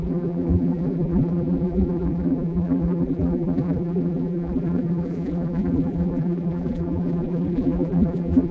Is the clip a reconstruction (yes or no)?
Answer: yes